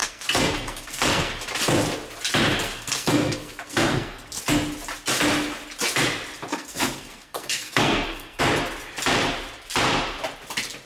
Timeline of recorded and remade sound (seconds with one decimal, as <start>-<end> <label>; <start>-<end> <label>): 0.0-1.3 remade; 1.3-2.6 recorded; 2.6-4.4 remade; 4.4-6.5 recorded; 6.5-8.4 remade; 8.4-10.9 recorded